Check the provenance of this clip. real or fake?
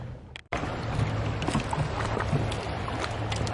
real